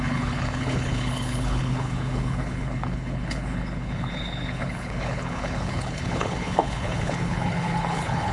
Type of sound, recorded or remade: remade